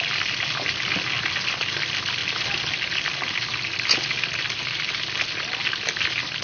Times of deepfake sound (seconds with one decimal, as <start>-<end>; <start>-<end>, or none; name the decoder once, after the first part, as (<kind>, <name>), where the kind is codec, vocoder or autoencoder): none